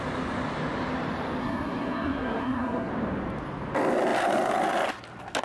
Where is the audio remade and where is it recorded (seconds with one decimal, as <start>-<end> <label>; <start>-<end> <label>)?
0.0-1.4 recorded; 1.4-2.9 remade; 2.9-5.4 recorded